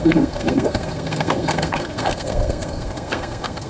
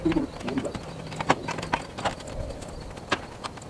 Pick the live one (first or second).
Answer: second